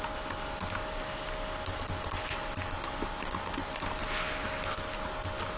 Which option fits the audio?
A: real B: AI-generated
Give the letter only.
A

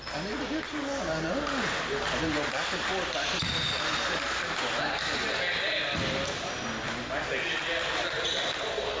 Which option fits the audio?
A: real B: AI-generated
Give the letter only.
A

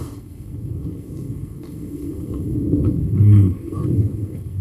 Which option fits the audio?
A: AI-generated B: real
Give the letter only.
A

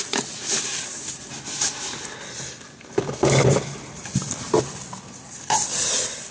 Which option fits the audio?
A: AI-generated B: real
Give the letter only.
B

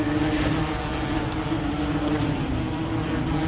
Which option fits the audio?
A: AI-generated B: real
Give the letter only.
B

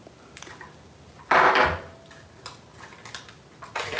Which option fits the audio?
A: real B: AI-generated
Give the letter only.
A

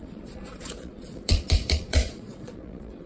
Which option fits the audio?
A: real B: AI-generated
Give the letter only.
B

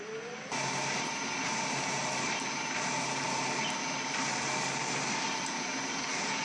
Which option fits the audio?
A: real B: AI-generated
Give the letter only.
A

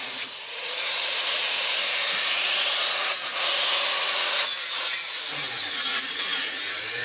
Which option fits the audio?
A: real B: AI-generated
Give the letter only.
B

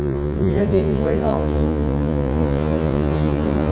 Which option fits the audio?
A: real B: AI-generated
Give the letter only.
B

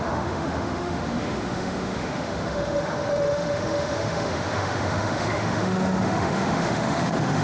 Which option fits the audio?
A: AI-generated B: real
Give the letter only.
A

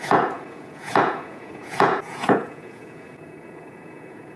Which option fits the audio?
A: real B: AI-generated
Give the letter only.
B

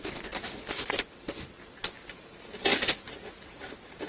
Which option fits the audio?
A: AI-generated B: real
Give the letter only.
B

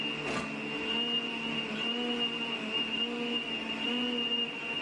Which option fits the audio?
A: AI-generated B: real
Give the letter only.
B